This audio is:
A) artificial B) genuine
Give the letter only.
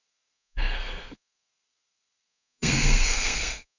A